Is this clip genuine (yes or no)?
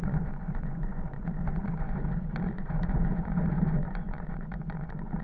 no